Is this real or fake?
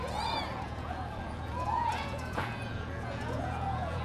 fake